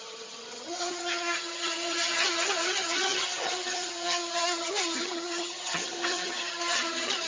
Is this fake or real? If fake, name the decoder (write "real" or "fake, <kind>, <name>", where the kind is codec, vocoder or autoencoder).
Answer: fake, vocoder, HiFi-GAN